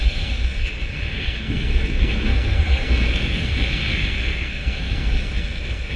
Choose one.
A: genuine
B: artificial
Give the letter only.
B